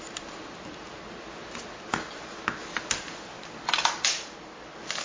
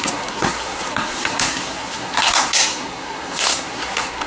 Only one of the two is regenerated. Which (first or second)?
second